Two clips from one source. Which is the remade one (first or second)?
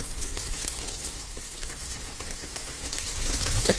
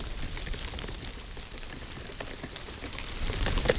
first